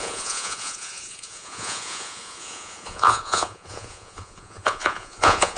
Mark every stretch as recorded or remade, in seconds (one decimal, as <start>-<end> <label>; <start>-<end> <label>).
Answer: 0.0-5.6 remade